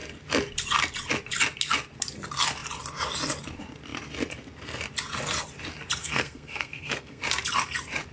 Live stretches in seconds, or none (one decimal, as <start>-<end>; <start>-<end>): 0.0-6.0; 7.2-8.1